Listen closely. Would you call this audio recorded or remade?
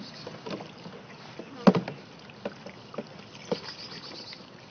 recorded